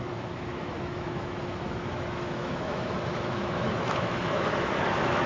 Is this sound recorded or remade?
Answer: remade